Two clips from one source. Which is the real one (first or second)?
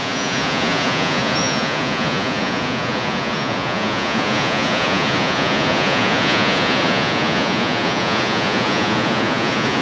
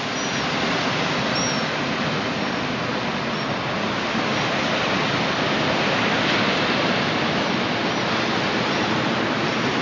second